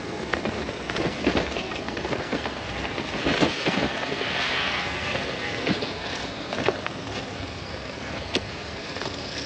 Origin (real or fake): fake